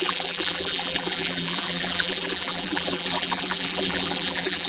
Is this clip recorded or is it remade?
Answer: remade